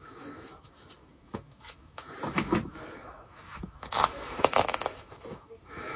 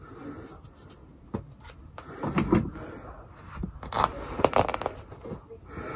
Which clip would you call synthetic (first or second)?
first